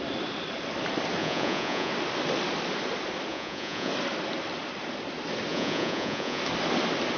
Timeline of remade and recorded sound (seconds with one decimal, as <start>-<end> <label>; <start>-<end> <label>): 0.0-1.2 recorded; 1.2-1.9 remade; 1.9-3.3 recorded; 3.3-3.9 remade; 3.9-5.5 recorded; 5.5-6.4 remade; 6.4-7.2 recorded